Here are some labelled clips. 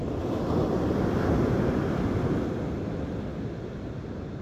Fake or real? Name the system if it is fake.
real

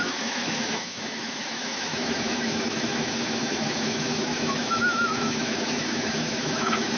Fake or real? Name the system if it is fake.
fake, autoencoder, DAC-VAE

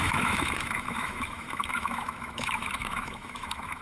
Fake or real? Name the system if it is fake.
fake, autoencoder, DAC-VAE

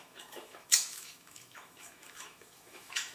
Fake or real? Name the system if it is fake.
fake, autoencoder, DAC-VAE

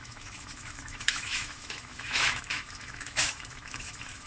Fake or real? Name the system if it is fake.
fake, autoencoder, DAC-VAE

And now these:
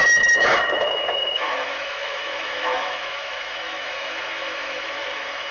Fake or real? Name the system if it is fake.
fake, autoencoder, DAC-VAE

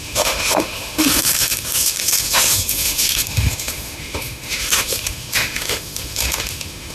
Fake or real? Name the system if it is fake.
fake, autoencoder, DAC-VAE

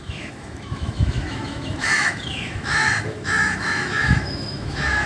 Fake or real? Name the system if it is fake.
fake, autoencoder, DAC-VAE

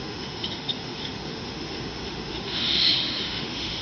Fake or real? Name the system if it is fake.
fake, autoencoder, DAC-VAE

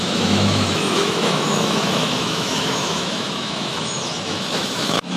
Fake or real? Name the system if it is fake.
fake, autoencoder, DAC-VAE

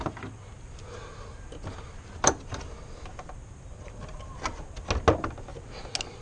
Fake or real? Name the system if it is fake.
real